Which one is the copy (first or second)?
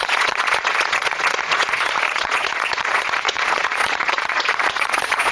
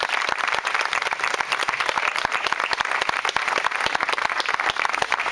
first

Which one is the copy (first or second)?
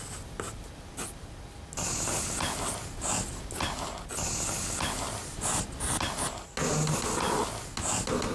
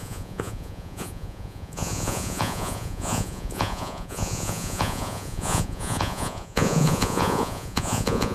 second